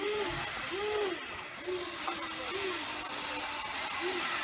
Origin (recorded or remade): recorded